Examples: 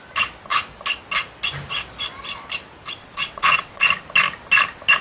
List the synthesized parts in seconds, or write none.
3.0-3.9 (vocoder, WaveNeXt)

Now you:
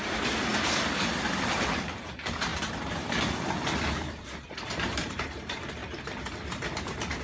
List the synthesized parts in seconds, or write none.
0.0-2.5 (vocoder, BigVGAN v2); 4.7-5.8

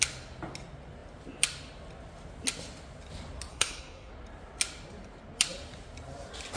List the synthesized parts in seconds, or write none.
3.5-4.1 (codec, SNAC)

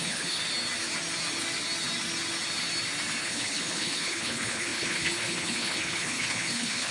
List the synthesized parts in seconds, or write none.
0.0-0.4 (codec, HILCodec); 3.2-6.9

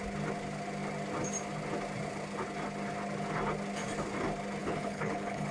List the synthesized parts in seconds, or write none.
4.6-5.5 (codec, HILCodec)

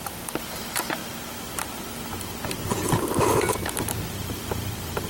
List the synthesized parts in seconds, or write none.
0.0-1.0 (vocoder, BigVGAN v2); 4.1-5.1